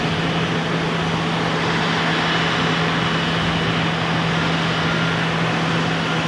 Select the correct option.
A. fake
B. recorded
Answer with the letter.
B